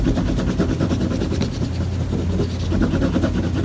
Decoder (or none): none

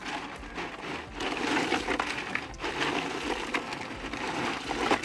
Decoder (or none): none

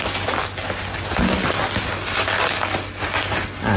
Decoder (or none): none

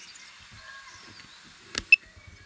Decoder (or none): none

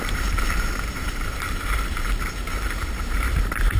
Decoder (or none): vocoder, BigVGAN v2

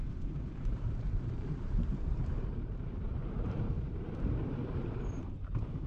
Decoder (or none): vocoder, BigVGAN v2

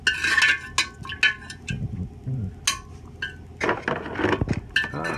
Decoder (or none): none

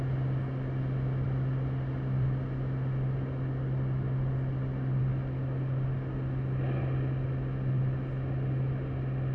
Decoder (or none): none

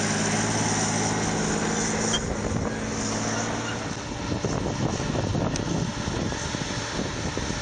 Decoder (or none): none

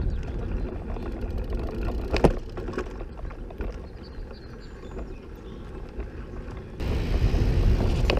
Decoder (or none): none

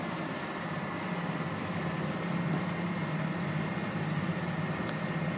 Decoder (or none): vocoder, BigVGAN v2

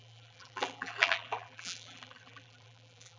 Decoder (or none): vocoder, BigVGAN v2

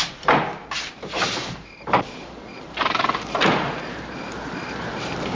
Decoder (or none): vocoder, BigVGAN v2